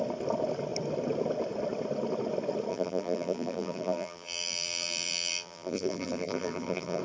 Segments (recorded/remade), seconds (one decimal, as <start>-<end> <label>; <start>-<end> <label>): 0.0-2.7 recorded; 2.7-7.0 remade